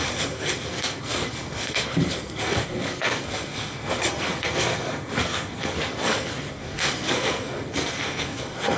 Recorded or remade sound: remade